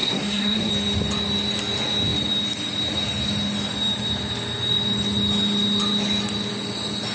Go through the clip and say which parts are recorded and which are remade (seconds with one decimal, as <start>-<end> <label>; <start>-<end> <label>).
0.0-0.7 remade; 0.7-7.1 recorded